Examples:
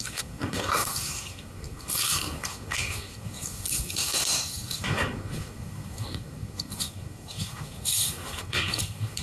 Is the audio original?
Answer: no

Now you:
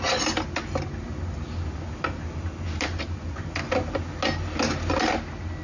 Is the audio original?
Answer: yes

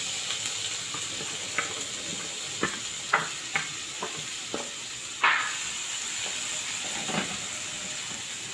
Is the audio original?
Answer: yes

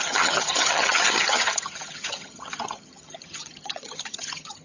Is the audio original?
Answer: no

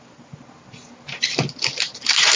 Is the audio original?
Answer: yes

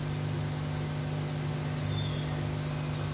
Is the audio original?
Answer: yes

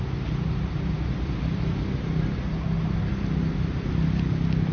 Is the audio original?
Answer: yes